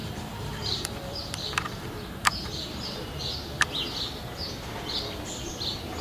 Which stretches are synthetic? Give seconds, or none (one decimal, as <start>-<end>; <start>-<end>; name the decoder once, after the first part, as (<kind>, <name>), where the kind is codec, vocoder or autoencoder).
0.0-3.2 (vocoder, BigVGAN v2)